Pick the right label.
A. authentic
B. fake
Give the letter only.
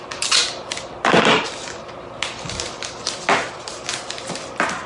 A